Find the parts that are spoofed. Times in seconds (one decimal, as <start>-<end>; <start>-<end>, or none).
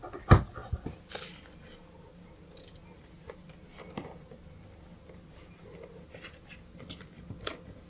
none